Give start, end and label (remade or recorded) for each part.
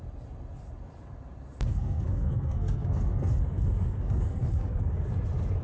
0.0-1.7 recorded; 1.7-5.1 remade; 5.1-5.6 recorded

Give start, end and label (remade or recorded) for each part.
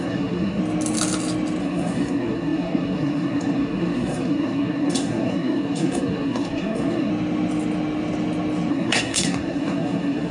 0.0-0.6 remade; 0.6-1.6 recorded; 1.6-7.1 remade; 7.1-8.7 recorded; 8.7-10.3 remade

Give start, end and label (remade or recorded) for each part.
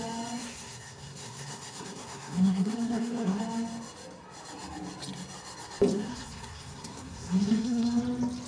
0.0-0.4 recorded; 0.4-3.4 remade; 3.4-5.9 recorded; 5.9-8.0 remade; 8.0-8.5 recorded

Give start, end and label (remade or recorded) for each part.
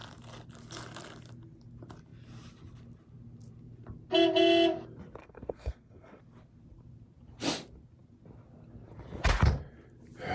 0.0-5.2 recorded; 5.2-6.2 remade; 6.2-10.3 recorded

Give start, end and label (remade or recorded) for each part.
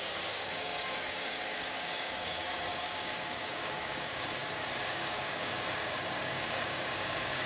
0.0-7.5 remade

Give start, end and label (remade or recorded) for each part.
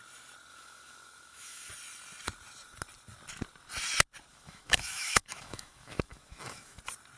0.0-0.5 recorded; 0.5-1.7 remade; 1.7-4.3 recorded; 4.3-6.8 remade; 6.8-7.2 recorded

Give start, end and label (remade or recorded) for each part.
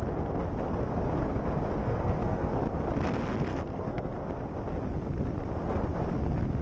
0.0-1.8 recorded; 1.8-2.5 remade; 2.5-3.5 recorded; 3.5-4.1 remade; 4.1-6.6 recorded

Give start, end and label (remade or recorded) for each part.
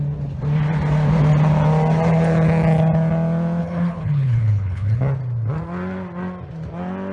0.0-3.6 recorded; 3.6-5.0 remade; 5.0-7.1 recorded